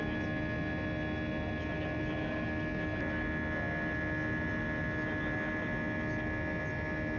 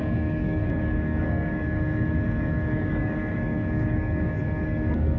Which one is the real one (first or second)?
first